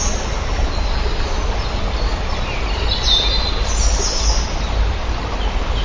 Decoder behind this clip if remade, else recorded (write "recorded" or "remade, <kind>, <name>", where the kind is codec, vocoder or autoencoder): recorded